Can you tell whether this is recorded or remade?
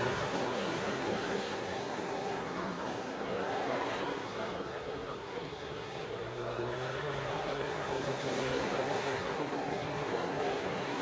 remade